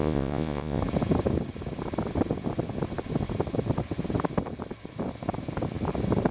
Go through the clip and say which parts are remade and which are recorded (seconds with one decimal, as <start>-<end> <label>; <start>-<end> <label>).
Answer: 0.0-0.8 remade; 0.8-6.3 recorded